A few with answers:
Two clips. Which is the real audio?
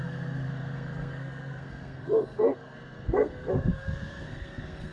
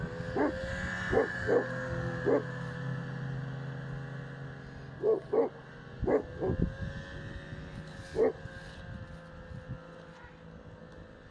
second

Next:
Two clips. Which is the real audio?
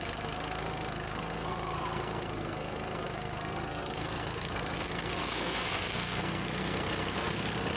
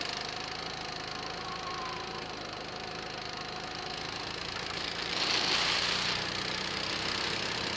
second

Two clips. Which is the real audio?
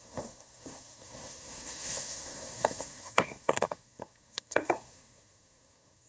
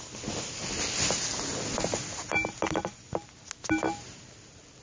second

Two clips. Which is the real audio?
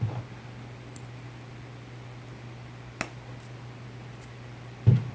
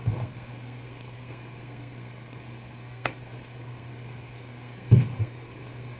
first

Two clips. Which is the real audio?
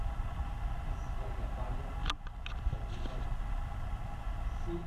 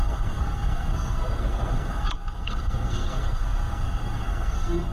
first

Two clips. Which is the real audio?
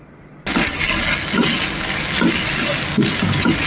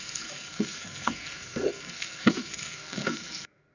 first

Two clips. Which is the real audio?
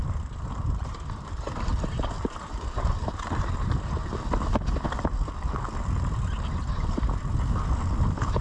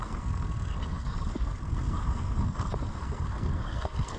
first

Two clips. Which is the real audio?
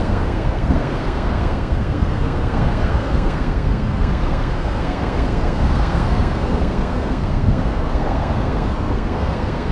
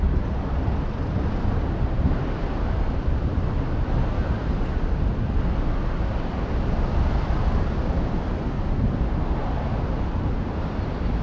second